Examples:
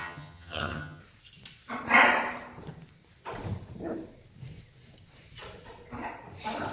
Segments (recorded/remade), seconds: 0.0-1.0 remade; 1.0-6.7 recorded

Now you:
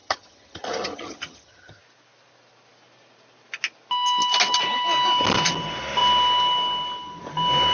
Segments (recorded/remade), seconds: 0.0-1.8 remade; 1.8-7.7 recorded